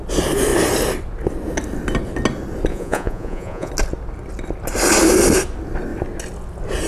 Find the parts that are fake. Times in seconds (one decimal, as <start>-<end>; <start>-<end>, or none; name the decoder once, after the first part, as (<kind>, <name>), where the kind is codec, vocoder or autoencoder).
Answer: 2.7-3.7 (vocoder, Vocos)